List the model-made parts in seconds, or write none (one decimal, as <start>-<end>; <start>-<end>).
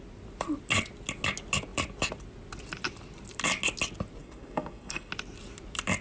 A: 4.2-5.1